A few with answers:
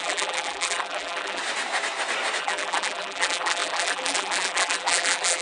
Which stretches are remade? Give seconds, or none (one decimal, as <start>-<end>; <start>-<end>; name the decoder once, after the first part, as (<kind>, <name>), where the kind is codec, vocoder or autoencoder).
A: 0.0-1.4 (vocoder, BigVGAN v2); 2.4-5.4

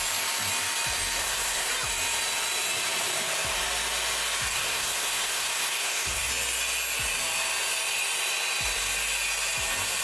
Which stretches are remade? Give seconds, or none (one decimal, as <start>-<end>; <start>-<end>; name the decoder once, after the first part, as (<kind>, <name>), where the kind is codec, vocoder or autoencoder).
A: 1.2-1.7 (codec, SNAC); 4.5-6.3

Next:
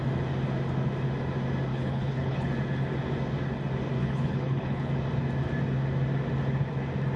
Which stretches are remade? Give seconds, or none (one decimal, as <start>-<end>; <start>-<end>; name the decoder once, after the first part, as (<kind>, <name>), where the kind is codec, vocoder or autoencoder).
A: 1.7-2.5 (codec, HILCodec); 4.0-4.9

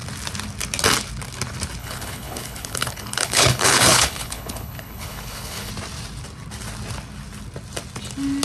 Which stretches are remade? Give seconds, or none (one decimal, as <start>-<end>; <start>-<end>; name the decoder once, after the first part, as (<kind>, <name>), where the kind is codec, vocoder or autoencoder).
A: 1.8-5.7 (codec, HILCodec)

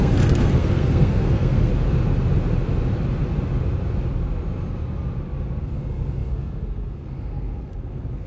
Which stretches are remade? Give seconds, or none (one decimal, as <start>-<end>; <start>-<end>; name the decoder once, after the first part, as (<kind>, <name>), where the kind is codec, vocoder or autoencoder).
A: 0.0-1.7 (codec, SNAC); 5.6-8.3